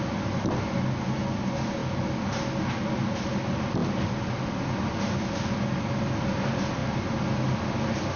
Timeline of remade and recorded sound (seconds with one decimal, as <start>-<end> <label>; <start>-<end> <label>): 0.0-3.8 recorded; 3.8-4.6 remade; 4.6-8.2 recorded

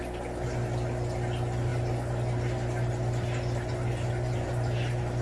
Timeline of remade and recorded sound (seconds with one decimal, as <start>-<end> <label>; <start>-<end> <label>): 0.0-5.2 recorded

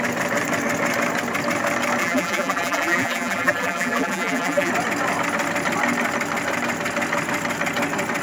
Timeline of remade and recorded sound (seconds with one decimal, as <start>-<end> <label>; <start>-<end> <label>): 0.0-2.0 recorded; 2.0-4.7 remade; 4.7-8.2 recorded